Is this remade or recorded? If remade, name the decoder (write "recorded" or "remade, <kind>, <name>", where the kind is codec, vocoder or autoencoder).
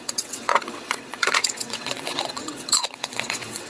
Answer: remade, vocoder, WaveNeXt